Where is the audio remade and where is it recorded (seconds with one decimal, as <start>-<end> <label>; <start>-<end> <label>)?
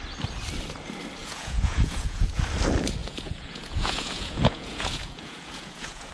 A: 0.0-1.2 recorded; 1.2-2.4 remade; 2.4-3.0 recorded; 3.0-6.1 remade